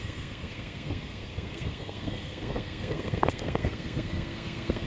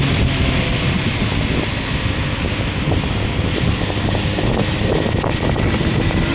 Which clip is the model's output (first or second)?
first